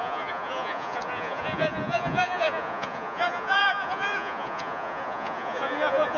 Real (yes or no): no